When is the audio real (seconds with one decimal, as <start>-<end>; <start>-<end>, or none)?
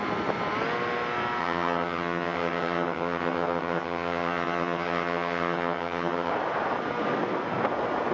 0.0-1.4; 6.3-8.1